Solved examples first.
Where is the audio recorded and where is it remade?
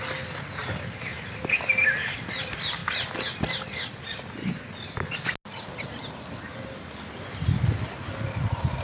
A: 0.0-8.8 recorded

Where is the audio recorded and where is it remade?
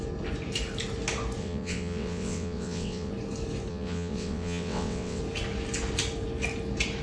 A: 0.0-1.4 recorded; 1.4-3.1 remade; 3.1-3.7 recorded; 3.7-5.2 remade; 5.2-7.0 recorded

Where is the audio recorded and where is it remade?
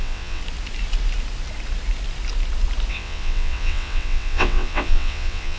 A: 0.0-0.4 remade; 0.4-2.9 recorded; 2.9-5.6 remade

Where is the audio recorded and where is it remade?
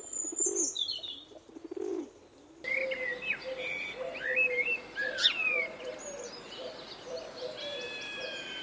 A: 0.0-8.6 recorded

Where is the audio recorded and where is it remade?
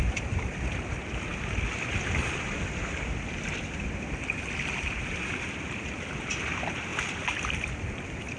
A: 0.0-8.4 recorded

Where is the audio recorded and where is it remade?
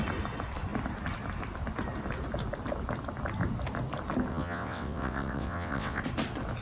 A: 0.0-4.3 recorded; 4.3-6.0 remade; 6.0-6.6 recorded